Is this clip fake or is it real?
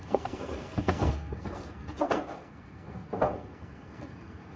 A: fake